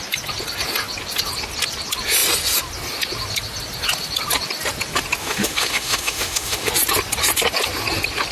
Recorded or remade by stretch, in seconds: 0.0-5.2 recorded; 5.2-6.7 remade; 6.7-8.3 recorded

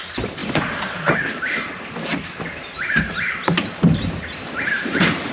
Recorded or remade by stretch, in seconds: 0.0-0.4 recorded; 0.4-1.0 remade; 1.0-2.1 recorded; 2.1-5.3 remade